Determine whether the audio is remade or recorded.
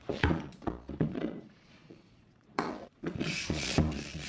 remade